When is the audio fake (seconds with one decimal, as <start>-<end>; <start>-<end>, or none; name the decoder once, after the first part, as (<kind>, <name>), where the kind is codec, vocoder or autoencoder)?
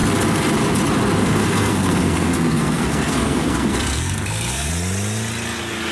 1.2-4.7 (codec, SNAC)